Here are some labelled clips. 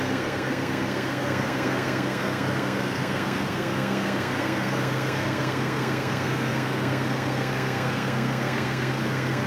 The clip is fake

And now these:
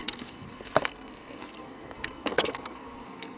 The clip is fake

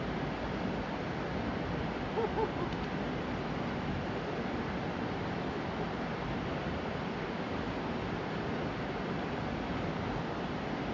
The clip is real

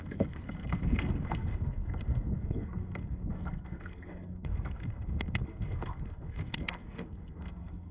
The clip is fake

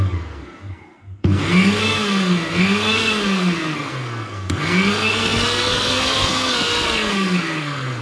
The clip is fake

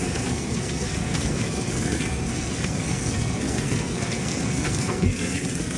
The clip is fake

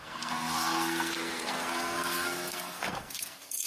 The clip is fake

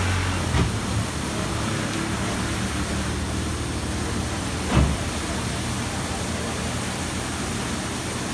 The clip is real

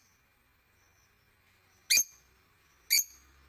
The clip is real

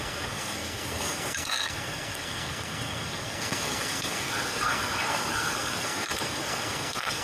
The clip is fake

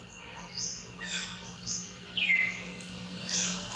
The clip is fake